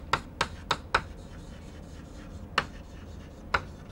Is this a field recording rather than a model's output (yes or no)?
yes